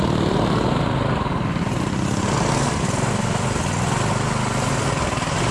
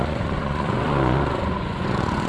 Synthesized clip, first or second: second